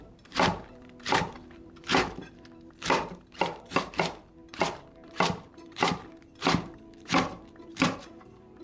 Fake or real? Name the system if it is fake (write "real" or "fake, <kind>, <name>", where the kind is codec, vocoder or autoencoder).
fake, vocoder, BigVGAN v2